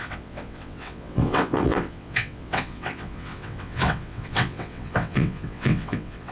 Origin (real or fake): fake